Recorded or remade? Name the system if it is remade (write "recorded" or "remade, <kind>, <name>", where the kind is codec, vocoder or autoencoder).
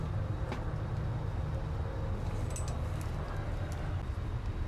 recorded